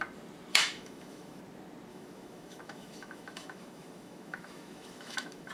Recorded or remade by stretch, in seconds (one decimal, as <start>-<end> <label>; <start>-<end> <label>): 0.0-0.5 recorded; 0.5-1.4 remade; 1.4-1.9 recorded; 1.9-5.5 remade